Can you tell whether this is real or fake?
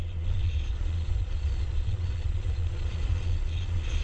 fake